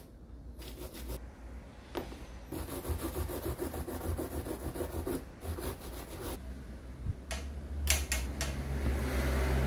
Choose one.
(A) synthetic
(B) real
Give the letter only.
B